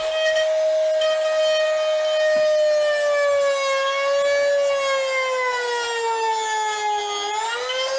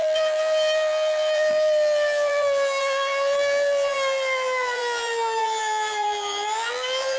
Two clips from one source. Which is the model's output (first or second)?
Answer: second